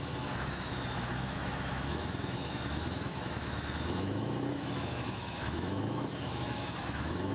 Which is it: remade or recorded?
remade